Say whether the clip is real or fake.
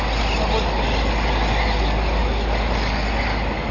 real